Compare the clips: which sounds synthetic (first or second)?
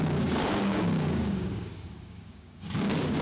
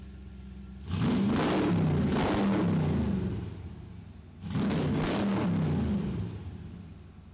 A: first